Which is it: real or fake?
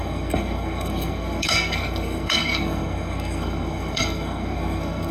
fake